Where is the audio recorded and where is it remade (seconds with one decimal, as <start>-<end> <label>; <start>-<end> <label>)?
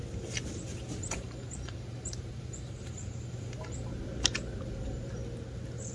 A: 0.0-0.5 recorded; 0.5-4.0 remade; 4.0-5.9 recorded